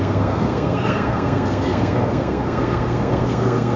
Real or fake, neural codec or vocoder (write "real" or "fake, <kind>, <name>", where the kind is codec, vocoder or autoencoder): fake, codec, SNAC